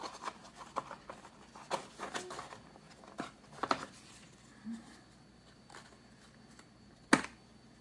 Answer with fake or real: real